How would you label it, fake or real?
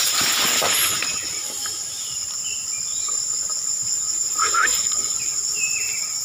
fake